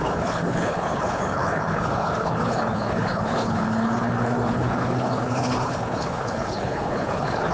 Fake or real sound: fake